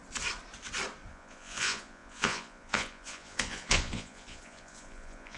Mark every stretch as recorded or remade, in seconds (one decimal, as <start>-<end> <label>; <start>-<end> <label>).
0.0-1.1 recorded; 1.1-5.4 remade